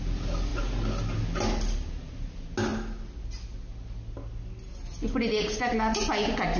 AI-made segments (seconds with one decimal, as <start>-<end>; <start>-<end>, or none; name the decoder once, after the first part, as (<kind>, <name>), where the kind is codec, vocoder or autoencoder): none